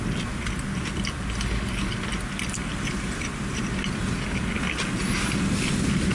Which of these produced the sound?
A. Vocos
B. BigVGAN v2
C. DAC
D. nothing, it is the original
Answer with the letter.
D